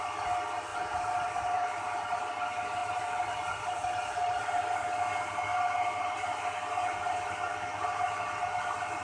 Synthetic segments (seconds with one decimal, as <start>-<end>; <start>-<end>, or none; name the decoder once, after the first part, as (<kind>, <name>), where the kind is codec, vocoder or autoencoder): 0.7-2.2 (vocoder, BigVGAN v2); 2.8-4.6; 5.5-6.4